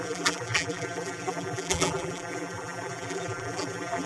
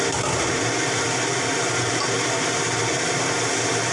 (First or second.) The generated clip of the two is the first